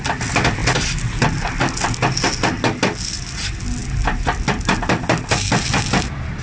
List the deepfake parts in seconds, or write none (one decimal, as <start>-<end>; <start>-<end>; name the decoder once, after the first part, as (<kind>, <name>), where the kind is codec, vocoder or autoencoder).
0.6-1.3 (vocoder, BigVGAN v2)